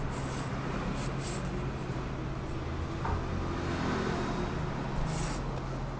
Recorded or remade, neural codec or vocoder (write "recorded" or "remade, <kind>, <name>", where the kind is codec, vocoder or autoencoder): recorded